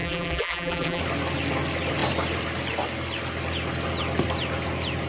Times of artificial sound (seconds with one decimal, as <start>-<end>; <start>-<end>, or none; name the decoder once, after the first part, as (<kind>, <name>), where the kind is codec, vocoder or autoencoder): 0.0-1.0 (vocoder, BigVGAN v2)